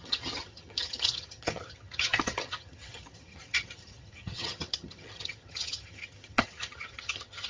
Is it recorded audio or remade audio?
remade